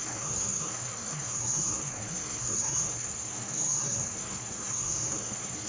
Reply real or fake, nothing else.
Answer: fake